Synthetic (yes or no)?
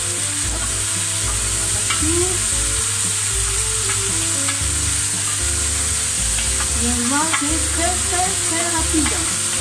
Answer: no